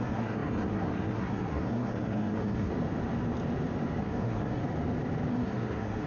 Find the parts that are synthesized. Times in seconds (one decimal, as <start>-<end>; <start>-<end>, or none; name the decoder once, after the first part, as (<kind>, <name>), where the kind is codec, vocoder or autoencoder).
0.0-2.7 (codec, SNAC); 4.0-4.6; 5.3-6.1